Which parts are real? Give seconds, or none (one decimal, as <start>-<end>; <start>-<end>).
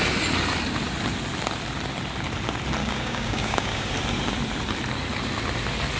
0.0-2.8; 3.9-6.0